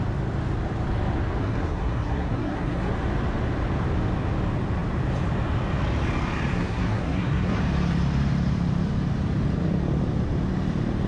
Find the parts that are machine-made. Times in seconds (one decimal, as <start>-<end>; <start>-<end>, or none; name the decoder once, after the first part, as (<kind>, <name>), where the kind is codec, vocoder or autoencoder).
1.4-2.9 (codec, SNAC); 6.5-7.6